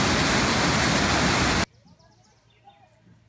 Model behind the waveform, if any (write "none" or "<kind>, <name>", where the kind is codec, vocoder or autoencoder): none